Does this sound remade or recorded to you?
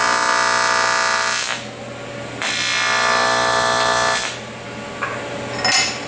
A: recorded